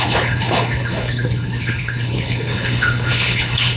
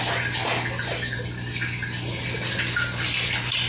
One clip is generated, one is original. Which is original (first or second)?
second